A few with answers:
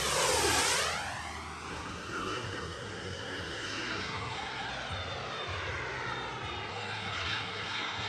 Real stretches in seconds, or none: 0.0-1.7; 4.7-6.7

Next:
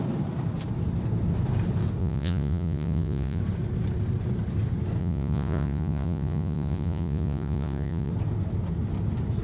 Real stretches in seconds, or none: 0.0-2.0; 3.4-5.0; 8.1-9.4

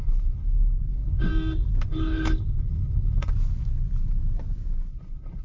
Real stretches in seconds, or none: 1.3-1.9; 3.3-4.9

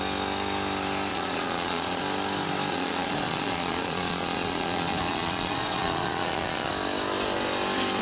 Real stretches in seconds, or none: 0.0-1.1; 2.0-2.7; 6.7-8.0

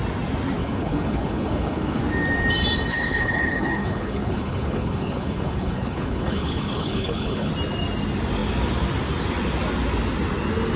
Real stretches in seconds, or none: 0.0-0.6; 2.0-2.9; 7.5-10.8